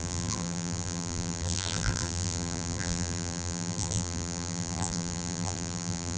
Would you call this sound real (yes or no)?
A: no